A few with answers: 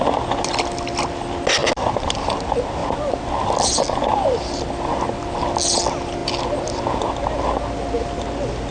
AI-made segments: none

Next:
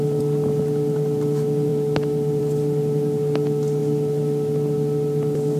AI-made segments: none